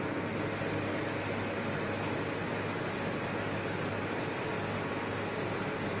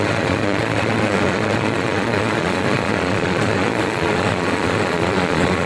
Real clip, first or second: first